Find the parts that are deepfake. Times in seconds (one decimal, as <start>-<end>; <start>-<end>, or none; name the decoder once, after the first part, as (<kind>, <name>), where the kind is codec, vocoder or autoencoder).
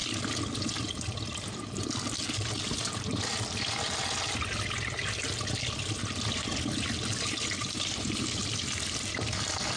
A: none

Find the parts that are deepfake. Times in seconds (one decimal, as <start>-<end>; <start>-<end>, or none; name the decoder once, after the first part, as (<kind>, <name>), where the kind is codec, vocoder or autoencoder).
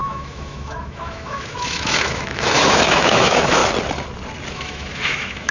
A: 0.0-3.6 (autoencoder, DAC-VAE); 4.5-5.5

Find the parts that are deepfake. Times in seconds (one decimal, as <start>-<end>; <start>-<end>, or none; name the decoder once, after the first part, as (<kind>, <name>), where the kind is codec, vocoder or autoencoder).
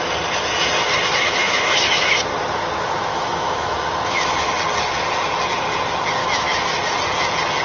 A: 1.4-2.1 (autoencoder, DAC-VAE); 3.1-4.5; 6.2-6.8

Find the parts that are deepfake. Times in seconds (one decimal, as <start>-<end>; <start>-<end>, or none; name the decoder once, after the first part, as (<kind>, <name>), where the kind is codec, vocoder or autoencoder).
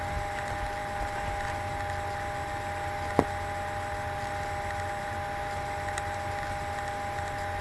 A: none